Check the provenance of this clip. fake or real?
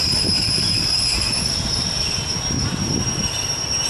real